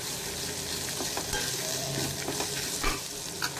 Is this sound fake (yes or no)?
no